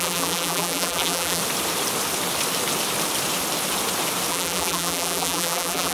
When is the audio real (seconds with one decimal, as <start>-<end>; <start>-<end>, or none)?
1.4-4.3